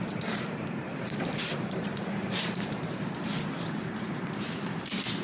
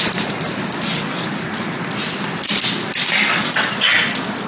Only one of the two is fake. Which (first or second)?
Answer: first